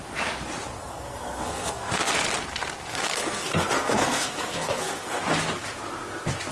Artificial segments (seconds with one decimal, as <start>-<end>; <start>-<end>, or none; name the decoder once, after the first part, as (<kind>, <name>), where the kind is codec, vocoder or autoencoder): 0.8-2.1 (codec, SNAC); 2.9-5.2